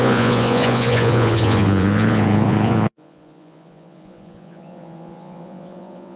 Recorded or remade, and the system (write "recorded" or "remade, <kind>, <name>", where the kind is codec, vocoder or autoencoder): remade, vocoder, Vocos